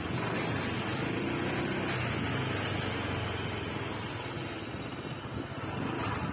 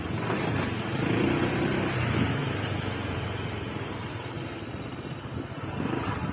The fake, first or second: second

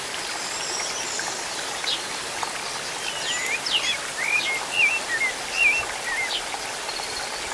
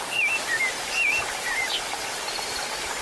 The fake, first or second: second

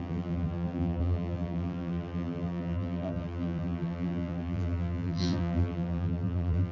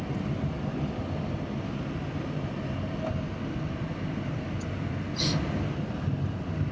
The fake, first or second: first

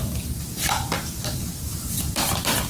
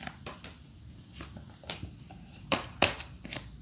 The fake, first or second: second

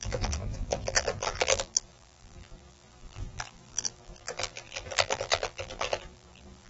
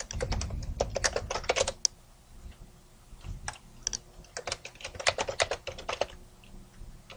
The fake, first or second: first